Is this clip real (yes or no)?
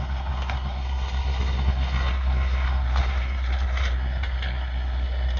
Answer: no